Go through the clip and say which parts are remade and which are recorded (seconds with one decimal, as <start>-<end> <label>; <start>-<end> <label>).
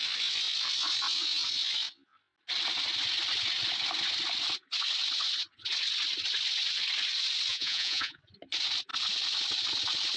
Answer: 0.0-7.5 recorded; 7.5-8.2 remade; 8.2-10.2 recorded